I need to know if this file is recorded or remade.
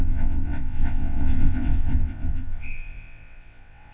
remade